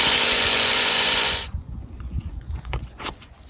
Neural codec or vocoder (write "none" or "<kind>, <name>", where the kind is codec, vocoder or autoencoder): vocoder, Vocos